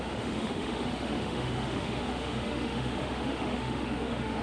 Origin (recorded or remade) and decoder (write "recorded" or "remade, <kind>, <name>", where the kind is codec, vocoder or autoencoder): remade, autoencoder, DAC-VAE